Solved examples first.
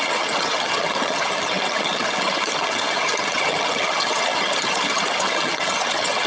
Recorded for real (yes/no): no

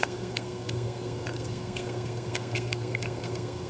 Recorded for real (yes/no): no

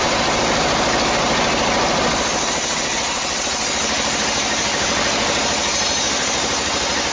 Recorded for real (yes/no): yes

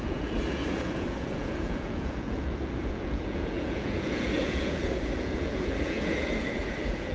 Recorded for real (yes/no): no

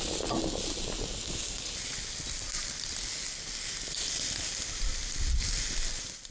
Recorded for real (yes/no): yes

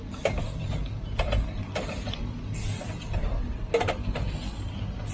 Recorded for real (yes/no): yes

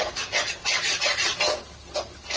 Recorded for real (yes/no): yes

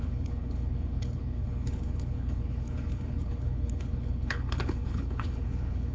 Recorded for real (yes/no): no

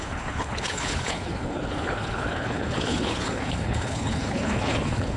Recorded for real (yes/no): no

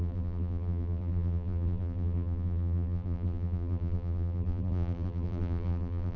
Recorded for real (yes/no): no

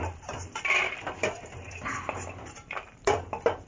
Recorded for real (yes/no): no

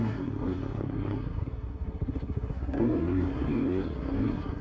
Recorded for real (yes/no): no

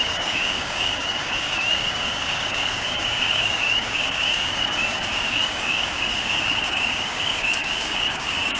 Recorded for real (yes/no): no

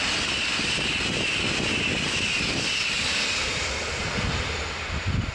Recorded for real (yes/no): yes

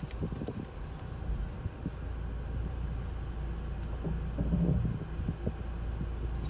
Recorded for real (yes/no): yes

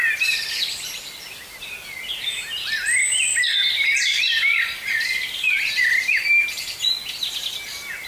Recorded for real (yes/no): no